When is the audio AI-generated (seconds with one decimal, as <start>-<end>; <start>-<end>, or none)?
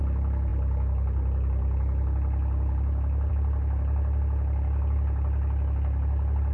none